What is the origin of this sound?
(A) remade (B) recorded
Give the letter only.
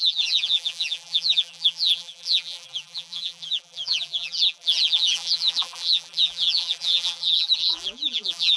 A